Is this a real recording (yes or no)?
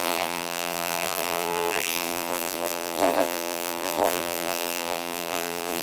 no